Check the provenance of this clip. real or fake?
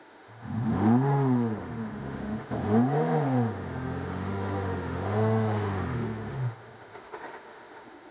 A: fake